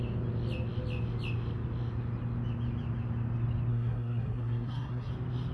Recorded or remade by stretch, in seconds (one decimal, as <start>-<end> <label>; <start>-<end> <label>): 0.0-3.7 recorded; 3.7-5.1 remade; 5.1-5.5 recorded